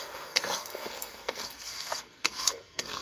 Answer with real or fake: fake